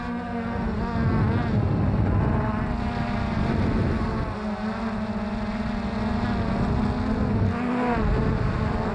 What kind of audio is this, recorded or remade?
recorded